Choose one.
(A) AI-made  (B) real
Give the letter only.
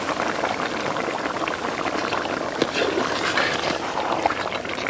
B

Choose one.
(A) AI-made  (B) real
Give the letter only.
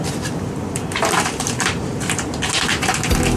B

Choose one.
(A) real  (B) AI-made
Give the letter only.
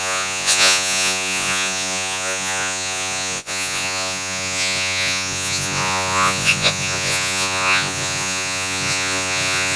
B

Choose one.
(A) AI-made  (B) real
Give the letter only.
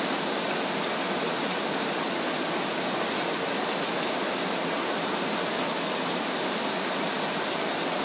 B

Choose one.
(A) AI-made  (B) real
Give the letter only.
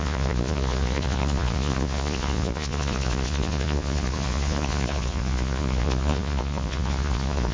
A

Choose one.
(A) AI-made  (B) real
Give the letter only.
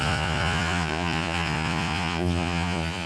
A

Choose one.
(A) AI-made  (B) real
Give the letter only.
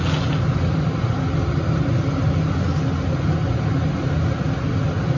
B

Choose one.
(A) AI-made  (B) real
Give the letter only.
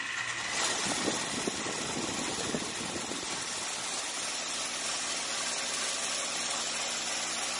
B